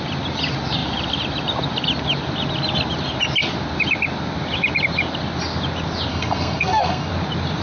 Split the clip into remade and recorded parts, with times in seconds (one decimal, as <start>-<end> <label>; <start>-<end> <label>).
0.0-6.1 recorded; 6.1-7.1 remade; 7.1-7.6 recorded